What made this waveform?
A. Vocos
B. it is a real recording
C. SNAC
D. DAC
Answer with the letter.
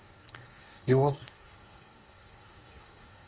C